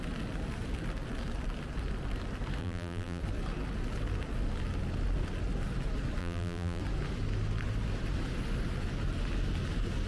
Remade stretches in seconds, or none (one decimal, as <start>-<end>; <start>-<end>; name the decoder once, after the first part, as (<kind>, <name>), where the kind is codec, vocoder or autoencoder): 2.6-3.2 (vocoder, BigVGAN v2); 6.2-6.8